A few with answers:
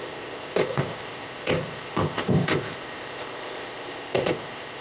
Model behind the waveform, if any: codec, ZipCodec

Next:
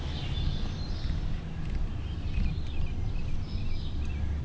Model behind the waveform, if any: none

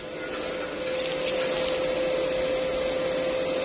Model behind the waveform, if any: none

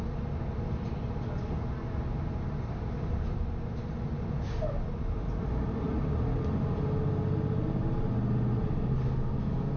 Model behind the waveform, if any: none